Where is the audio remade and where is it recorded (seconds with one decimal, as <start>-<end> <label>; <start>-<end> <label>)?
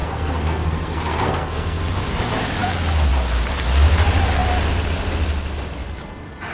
0.0-1.8 remade; 1.8-6.5 recorded